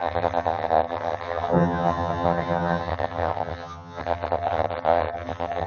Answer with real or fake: fake